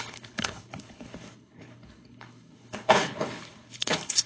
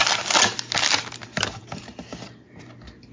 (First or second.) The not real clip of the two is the first